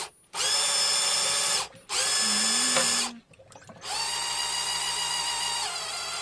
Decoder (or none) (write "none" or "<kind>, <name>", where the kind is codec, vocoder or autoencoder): none